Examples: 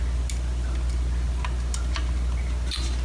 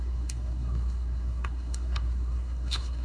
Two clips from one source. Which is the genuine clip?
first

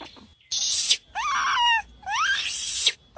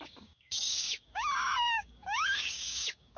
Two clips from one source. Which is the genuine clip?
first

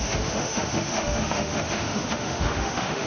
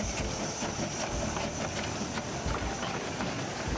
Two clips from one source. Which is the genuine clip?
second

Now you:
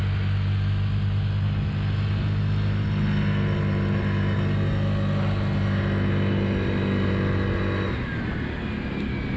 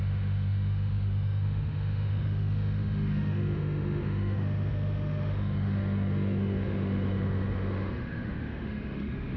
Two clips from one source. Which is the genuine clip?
first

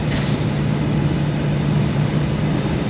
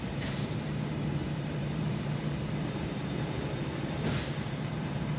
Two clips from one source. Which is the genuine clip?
first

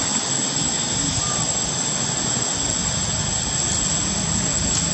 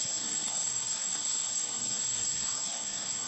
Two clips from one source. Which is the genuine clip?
first